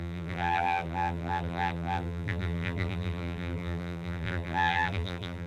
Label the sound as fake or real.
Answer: fake